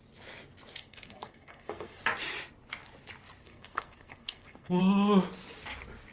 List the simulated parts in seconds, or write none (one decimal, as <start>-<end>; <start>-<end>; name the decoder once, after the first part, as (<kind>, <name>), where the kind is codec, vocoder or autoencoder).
0.8-2.0 (codec, SNAC); 3.4-4.8